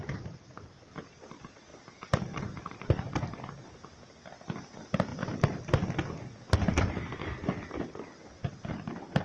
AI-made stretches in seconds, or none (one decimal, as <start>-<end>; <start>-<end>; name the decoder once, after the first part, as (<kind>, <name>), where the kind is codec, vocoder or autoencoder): none